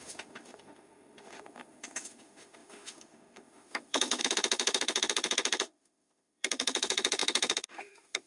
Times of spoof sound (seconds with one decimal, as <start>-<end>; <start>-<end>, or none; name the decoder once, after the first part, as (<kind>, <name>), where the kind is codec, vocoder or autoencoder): 0.0-8.3 (autoencoder, DAC-VAE)